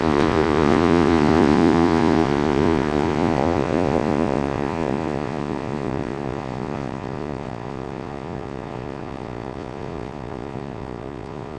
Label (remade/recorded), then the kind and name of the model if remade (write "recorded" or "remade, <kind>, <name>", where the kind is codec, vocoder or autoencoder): remade, vocoder, Vocos